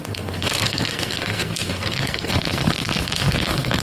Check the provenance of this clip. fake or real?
fake